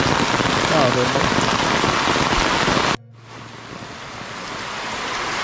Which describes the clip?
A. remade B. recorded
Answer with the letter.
B